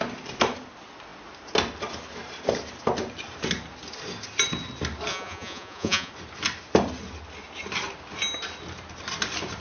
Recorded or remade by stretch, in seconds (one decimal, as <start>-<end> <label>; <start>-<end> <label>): 0.0-5.1 recorded; 5.1-6.1 remade; 6.1-9.6 recorded